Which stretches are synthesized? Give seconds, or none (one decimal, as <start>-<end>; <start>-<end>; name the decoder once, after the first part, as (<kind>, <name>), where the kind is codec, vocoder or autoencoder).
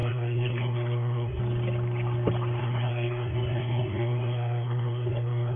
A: 0.0-1.4 (codec, SNAC); 2.6-5.6